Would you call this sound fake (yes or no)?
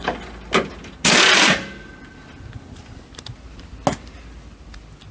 no